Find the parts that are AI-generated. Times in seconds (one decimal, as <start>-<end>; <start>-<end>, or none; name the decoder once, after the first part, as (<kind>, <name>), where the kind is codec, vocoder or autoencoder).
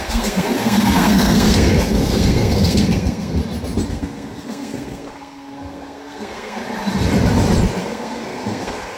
0.0-3.4 (codec, SNAC); 3.9-6.6; 7.8-9.0